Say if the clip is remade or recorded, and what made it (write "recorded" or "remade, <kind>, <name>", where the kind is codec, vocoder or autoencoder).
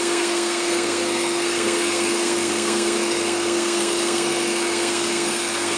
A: remade, codec, SNAC